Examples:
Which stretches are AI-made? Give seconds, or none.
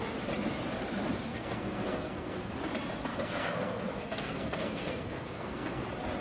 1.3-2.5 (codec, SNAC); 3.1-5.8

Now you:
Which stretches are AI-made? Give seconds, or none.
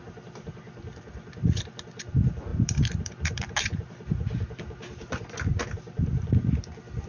0.0-7.1 (vocoder, BigVGAN v2)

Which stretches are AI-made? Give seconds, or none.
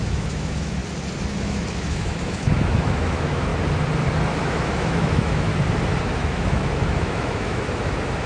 0.0-0.8 (autoencoder, DAC-VAE); 1.3-3.5; 4.4-5.5; 6.0-8.3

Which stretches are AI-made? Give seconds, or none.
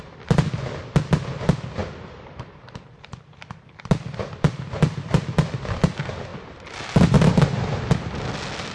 1.8-5.2 (vocoder, BigVGAN v2); 6.3-7.9